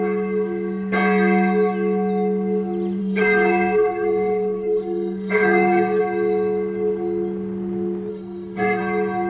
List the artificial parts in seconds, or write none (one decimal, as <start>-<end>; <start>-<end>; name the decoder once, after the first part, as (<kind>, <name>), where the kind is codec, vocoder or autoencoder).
3.0-6.0 (codec, SNAC); 8.1-8.8